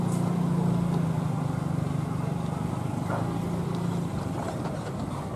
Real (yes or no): yes